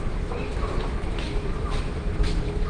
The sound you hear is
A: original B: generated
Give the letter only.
B